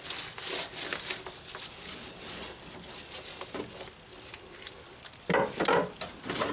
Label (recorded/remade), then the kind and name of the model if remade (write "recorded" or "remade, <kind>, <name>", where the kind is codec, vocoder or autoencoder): recorded